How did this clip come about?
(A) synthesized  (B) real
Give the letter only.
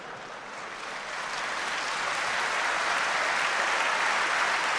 B